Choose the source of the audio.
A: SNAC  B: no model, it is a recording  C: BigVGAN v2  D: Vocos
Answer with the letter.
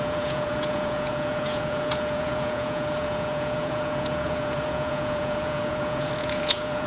D